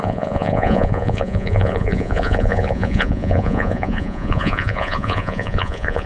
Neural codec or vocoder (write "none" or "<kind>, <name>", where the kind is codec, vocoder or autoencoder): vocoder, Vocos